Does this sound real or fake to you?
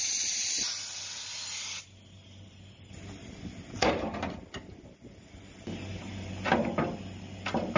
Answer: real